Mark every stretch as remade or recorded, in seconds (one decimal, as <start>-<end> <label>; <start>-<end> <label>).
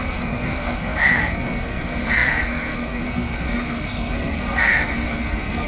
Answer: 0.0-5.7 remade